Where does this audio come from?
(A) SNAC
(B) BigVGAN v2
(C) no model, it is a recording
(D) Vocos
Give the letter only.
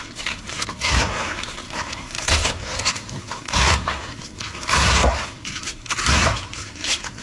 A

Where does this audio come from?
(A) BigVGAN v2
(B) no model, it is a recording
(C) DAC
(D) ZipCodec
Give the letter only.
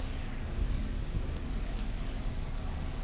C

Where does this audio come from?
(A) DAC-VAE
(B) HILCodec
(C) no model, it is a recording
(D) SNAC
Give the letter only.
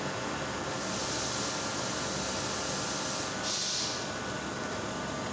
C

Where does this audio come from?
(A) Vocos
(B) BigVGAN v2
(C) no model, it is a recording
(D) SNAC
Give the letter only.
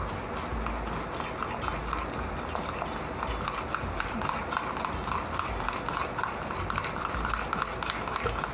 C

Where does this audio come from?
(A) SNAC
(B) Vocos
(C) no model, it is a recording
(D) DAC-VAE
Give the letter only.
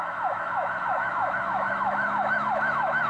D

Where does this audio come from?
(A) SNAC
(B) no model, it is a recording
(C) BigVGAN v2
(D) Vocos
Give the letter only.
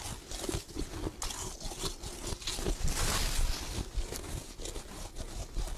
B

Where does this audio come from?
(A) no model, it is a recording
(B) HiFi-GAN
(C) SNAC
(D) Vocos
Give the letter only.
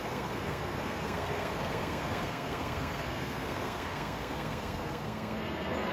C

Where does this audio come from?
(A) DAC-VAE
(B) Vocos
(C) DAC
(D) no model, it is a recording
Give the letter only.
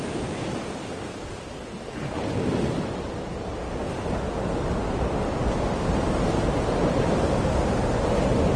D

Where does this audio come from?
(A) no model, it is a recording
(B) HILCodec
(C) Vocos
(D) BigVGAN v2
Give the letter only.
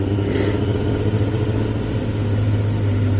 A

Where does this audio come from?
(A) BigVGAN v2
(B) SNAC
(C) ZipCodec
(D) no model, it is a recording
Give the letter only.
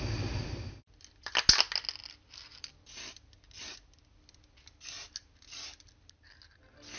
D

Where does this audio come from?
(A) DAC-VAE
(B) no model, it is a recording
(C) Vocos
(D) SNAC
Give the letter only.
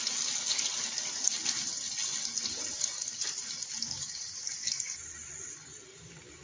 B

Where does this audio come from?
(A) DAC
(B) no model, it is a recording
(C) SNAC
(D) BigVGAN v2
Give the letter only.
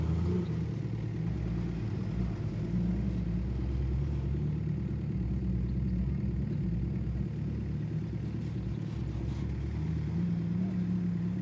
B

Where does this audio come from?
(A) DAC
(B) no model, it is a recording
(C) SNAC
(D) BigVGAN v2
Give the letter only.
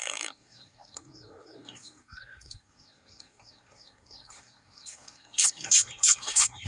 C